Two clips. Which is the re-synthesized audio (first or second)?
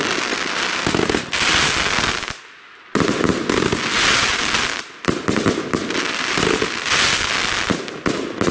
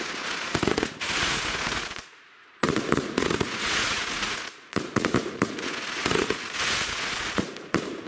second